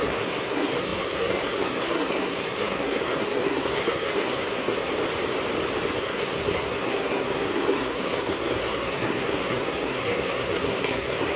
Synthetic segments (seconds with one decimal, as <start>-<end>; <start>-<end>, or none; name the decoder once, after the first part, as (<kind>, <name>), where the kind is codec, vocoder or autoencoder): 0.0-4.9 (codec, SNAC); 6.0-11.4